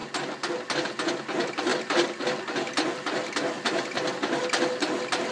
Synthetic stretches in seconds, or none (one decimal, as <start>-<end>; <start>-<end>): none